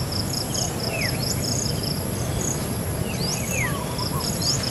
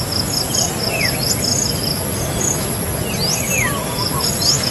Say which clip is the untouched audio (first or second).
second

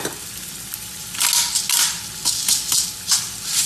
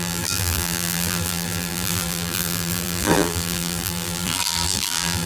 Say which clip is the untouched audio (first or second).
first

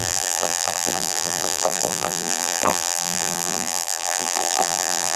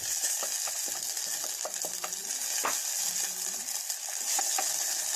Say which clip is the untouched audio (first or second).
second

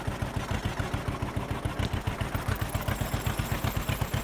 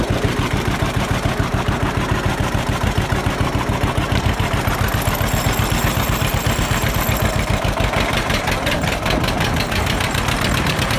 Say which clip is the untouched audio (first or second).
first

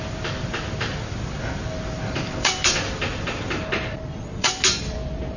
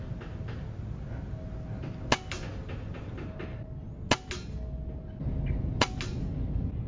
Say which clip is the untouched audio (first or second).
second